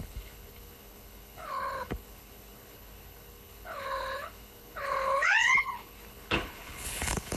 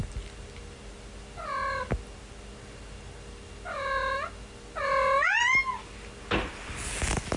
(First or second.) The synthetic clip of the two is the first